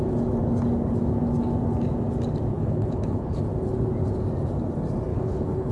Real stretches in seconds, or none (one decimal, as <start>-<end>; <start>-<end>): 0.0-2.5; 3.4-5.1